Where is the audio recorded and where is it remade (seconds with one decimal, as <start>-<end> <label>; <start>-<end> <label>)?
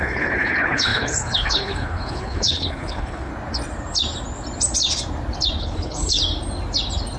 0.0-3.3 remade; 3.3-5.6 recorded; 5.6-6.2 remade; 6.2-7.2 recorded